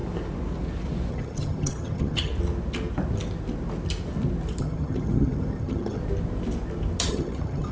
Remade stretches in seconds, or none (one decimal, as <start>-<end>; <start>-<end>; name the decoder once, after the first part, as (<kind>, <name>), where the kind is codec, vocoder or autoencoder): 1.1-2.3 (vocoder, HiFi-GAN); 4.6-6.0; 7.1-7.7